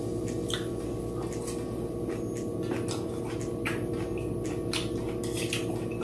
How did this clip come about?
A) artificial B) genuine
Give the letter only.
B